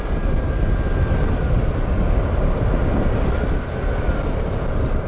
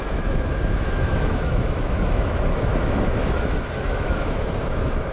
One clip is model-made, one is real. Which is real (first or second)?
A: first